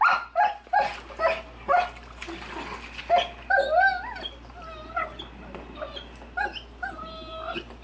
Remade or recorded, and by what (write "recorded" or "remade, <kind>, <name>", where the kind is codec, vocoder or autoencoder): recorded